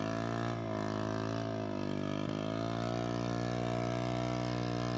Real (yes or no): yes